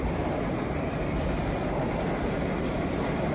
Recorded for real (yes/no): no